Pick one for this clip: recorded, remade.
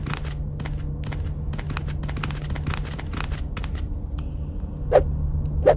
recorded